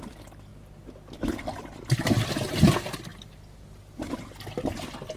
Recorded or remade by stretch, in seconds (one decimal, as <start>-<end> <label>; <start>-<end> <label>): 0.0-5.2 recorded